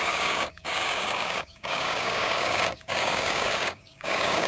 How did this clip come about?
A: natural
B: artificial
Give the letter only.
B